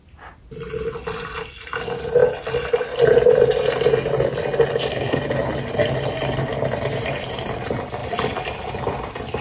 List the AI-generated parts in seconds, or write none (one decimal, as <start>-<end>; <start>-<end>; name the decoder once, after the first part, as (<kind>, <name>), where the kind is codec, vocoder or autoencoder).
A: 4.7-5.2 (codec, SNAC)